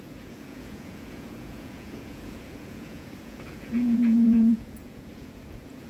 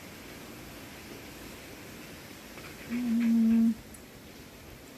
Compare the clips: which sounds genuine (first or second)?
second